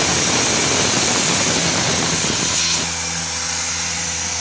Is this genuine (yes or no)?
yes